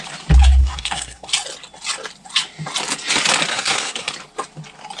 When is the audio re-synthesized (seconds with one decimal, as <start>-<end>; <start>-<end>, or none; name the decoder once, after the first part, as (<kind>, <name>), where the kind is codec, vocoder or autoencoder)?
0.6-1.3 (codec, SNAC); 3.5-4.1